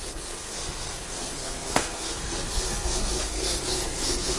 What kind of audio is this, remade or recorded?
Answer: remade